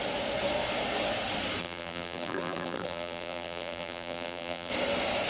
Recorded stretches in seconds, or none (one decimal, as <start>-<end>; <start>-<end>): 0.0-1.6; 4.7-5.3